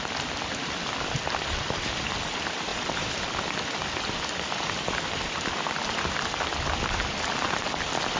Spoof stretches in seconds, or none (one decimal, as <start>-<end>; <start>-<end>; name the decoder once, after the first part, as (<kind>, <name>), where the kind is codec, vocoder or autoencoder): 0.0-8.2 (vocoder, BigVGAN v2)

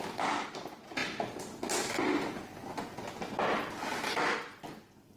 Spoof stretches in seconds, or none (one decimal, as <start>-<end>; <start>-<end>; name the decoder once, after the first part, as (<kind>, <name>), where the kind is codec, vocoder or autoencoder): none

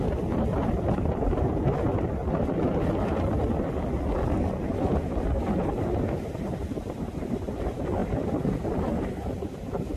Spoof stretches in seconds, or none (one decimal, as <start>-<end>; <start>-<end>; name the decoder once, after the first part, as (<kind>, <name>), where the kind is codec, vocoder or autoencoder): 0.0-2.2 (vocoder, BigVGAN v2); 5.6-8.0; 8.8-10.0

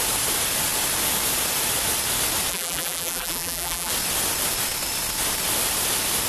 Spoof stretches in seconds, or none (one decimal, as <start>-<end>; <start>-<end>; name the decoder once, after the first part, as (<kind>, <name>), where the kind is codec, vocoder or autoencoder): 2.5-3.9 (vocoder, BigVGAN v2)

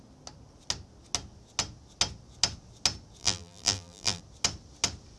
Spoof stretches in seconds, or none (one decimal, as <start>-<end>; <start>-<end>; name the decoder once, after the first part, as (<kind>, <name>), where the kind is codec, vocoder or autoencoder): 3.2-4.2 (vocoder, BigVGAN v2)

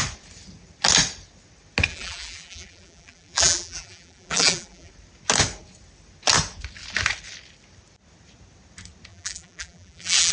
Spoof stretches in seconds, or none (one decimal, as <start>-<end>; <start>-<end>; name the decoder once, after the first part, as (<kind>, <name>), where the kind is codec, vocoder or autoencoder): 1.9-4.9 (vocoder, BigVGAN v2); 9.1-10.3

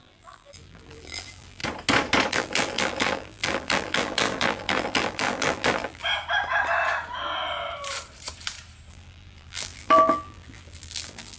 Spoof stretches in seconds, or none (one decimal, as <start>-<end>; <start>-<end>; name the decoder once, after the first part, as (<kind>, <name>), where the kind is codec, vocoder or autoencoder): 0.0-1.6 (vocoder, BigVGAN v2); 2.3-6.0; 8.9-11.4

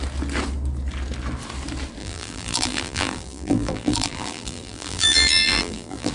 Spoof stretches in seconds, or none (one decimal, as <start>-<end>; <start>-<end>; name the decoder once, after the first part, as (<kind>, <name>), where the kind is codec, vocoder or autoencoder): 2.0-6.1 (vocoder, BigVGAN v2)